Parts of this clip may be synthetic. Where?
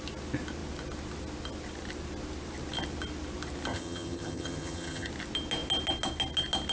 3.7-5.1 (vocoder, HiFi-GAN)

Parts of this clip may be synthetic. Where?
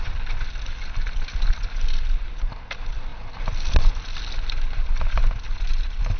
none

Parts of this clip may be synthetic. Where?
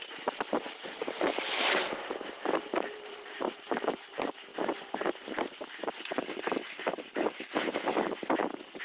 0.0-4.5 (vocoder, BigVGAN v2); 5.1-8.8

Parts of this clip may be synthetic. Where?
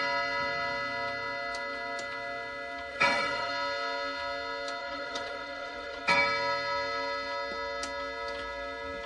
2.9-3.5 (vocoder, WaveNeXt); 4.8-6.0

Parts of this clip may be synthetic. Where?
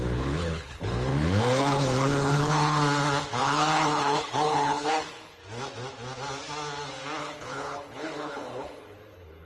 0.0-2.8 (codec, HILCodec); 3.4-5.4; 7.2-9.4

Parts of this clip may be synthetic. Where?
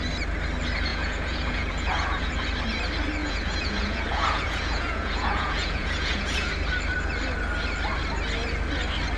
0.9-2.3 (vocoder, Vocos); 3.2-6.5